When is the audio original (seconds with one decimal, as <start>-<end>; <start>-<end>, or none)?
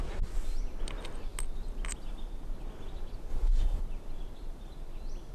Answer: 0.0-3.3; 3.8-5.3